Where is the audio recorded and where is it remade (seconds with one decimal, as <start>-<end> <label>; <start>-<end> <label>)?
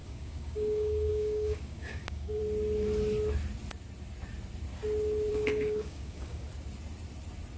0.0-2.4 remade; 2.4-5.3 recorded; 5.3-6.5 remade; 6.5-7.6 recorded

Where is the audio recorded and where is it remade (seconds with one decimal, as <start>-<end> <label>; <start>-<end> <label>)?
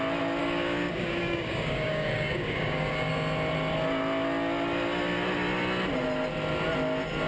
0.0-0.4 recorded; 0.4-3.1 remade; 3.1-7.3 recorded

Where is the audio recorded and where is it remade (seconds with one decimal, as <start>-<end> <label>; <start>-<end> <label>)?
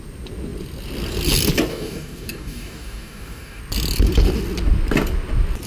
0.0-1.7 recorded; 1.7-3.6 remade; 3.6-5.7 recorded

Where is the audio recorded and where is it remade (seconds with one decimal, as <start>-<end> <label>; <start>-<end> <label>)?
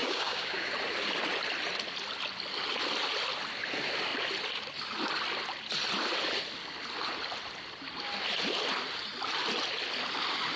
0.0-0.7 remade; 0.7-10.6 recorded